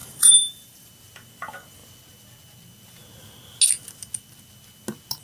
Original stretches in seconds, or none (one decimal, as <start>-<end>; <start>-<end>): 0.9-5.2